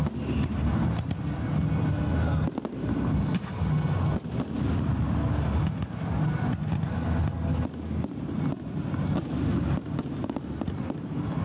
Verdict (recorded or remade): recorded